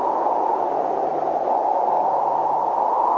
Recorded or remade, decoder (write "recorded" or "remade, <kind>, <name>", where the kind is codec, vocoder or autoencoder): recorded